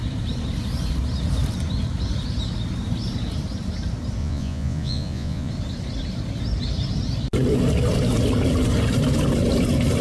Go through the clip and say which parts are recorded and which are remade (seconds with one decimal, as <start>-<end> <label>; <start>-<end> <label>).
0.0-4.2 recorded; 4.2-5.5 remade; 5.5-10.0 recorded